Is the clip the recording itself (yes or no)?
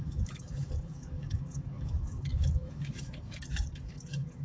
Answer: no